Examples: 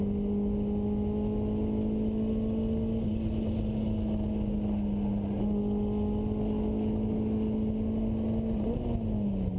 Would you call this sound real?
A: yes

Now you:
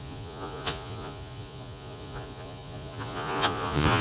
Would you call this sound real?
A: no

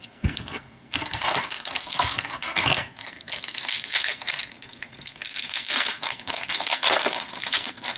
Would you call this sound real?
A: no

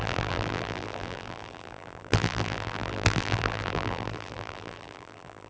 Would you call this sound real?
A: no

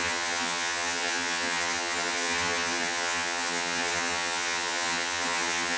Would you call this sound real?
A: no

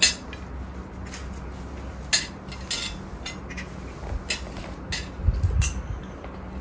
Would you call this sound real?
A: yes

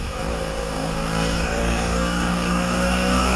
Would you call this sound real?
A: no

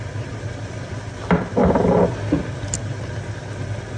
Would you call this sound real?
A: yes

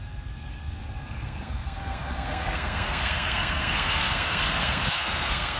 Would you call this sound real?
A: no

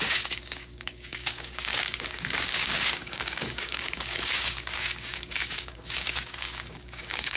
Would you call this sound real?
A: no